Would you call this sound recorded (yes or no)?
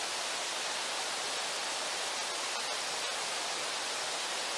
yes